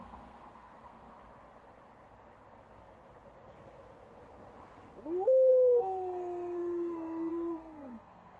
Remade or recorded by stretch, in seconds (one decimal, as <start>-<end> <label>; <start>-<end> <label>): 0.0-1.2 remade; 1.2-5.5 recorded; 5.5-8.4 remade